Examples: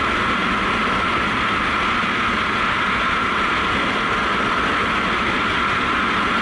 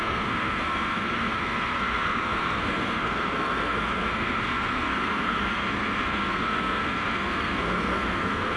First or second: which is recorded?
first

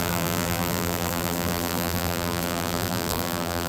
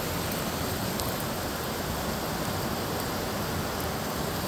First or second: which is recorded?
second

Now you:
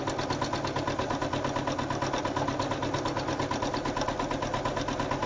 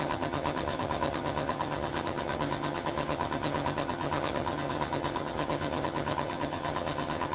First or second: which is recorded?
first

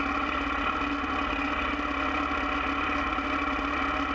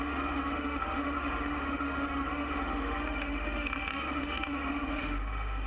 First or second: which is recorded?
first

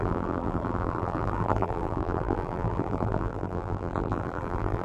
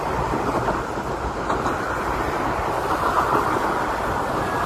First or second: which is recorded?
second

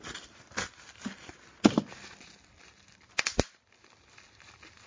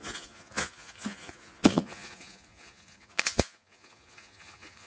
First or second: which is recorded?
first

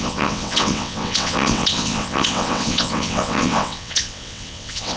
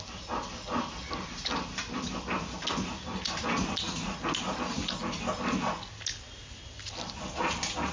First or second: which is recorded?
second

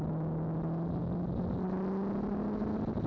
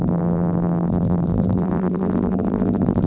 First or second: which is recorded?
first